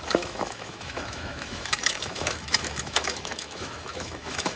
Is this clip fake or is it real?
fake